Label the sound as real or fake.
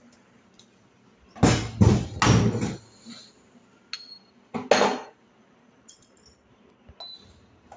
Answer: real